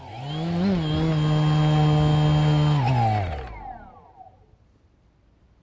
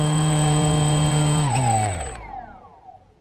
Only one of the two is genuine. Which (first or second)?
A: first